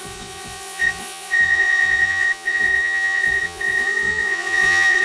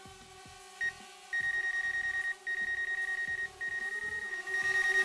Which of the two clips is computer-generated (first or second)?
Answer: first